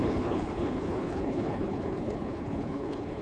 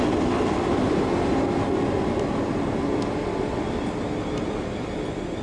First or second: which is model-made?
first